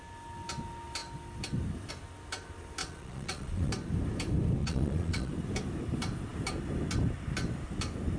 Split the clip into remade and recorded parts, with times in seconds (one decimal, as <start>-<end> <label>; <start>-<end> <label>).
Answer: 0.0-2.8 recorded; 2.8-3.7 remade; 3.7-4.6 recorded; 4.6-5.3 remade; 5.3-8.2 recorded